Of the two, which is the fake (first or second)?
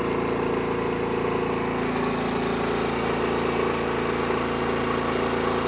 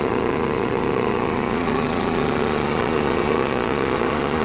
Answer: second